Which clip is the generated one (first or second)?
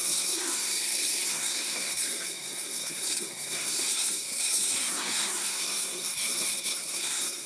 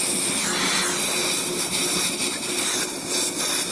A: first